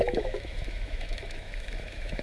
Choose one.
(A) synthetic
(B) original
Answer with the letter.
A